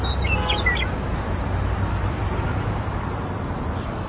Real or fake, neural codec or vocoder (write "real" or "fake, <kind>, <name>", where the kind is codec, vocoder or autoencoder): real